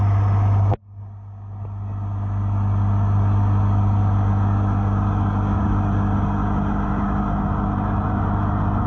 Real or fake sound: real